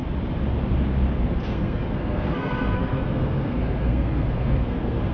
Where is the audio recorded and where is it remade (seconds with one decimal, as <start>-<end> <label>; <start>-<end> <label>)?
0.0-1.1 recorded; 1.1-5.1 remade

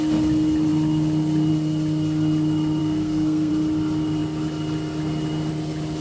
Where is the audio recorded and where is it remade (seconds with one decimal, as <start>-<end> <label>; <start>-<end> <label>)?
0.0-2.8 recorded; 2.8-3.5 remade; 3.5-6.0 recorded

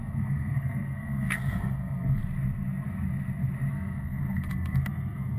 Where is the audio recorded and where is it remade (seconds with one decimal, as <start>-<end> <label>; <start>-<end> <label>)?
0.0-2.2 remade; 2.2-3.7 recorded; 3.7-5.4 remade